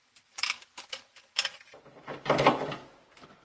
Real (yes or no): no